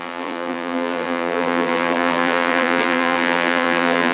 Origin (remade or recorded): remade